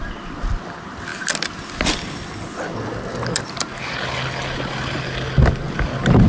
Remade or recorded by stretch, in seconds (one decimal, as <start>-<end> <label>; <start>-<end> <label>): 0.0-6.3 recorded